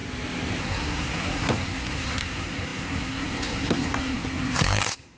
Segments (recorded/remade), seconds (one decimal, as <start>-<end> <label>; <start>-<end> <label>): 0.0-0.6 recorded; 0.6-5.2 remade